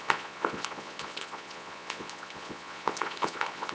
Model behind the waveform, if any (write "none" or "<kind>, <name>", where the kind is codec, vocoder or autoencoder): vocoder, Vocos